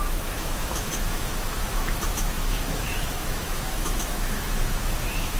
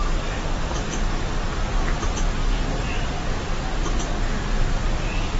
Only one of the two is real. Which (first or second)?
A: second